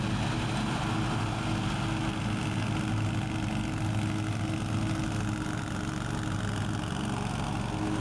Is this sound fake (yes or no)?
no